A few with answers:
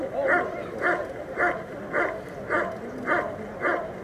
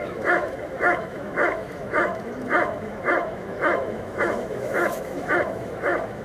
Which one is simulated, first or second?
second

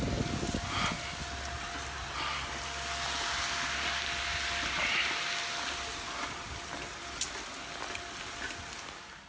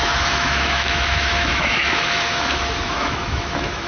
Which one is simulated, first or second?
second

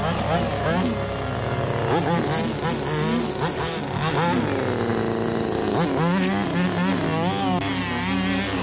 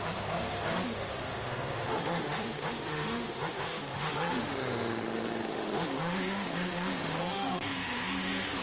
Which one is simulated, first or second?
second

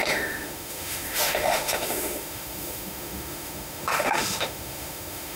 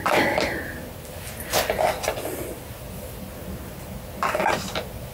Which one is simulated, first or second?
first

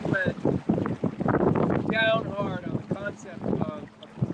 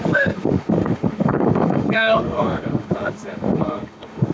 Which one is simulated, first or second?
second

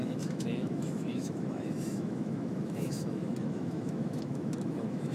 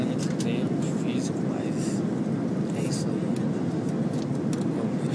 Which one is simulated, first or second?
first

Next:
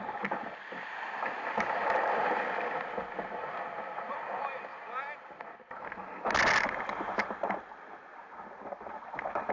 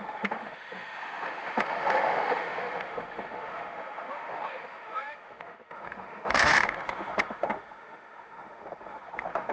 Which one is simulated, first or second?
second